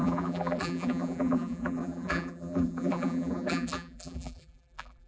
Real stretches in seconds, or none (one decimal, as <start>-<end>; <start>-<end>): none